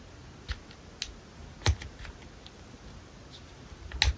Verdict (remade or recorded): recorded